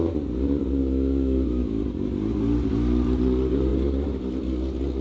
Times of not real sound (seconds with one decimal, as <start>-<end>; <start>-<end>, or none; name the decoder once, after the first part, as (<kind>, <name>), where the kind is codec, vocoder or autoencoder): 0.8-1.8 (autoencoder, DAC-VAE)